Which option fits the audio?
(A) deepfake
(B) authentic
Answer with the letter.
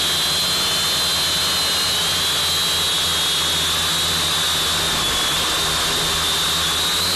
B